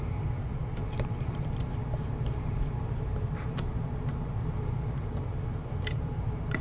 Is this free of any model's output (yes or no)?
no